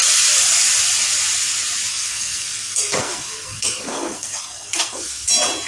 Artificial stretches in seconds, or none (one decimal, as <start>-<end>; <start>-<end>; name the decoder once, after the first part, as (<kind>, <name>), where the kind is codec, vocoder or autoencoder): 1.9-5.3 (codec, SNAC)